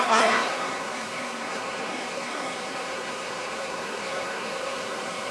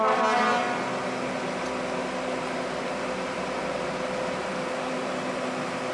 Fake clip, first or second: first